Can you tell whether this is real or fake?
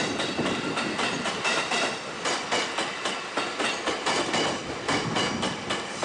real